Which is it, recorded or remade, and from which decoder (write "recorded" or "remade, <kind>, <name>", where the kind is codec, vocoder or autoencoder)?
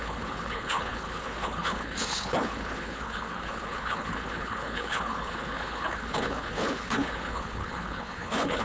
remade, codec, HILCodec